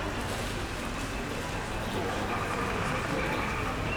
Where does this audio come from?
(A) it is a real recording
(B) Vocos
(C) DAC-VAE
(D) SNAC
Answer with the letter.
A